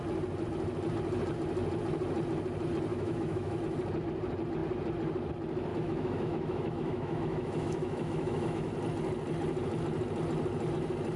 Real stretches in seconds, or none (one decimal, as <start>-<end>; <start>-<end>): 0.0-2.9; 3.6-5.7; 8.7-11.2